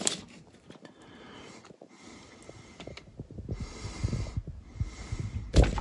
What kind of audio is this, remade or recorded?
recorded